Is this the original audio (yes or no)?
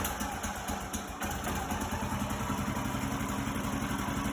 yes